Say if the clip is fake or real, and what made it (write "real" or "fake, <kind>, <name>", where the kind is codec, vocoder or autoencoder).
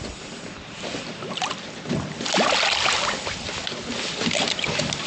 real